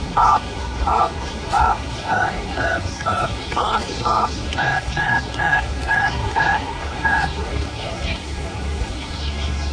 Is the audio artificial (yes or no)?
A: yes